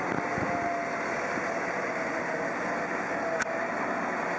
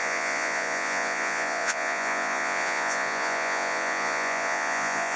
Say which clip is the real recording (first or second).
first